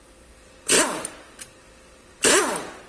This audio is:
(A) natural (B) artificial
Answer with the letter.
A